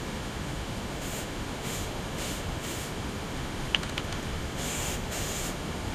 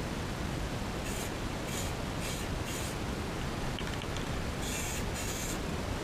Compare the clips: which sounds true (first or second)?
second